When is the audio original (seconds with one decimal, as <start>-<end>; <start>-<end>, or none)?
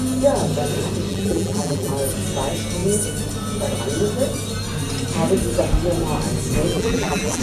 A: 0.0-1.1; 1.9-6.7